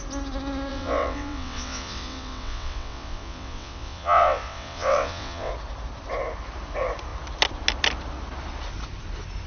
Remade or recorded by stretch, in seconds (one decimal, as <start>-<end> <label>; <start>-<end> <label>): 0.0-0.7 recorded; 0.7-5.5 remade; 5.5-9.5 recorded